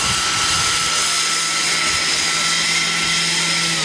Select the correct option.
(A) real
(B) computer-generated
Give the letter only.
A